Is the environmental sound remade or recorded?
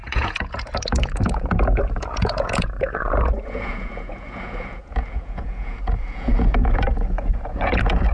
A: remade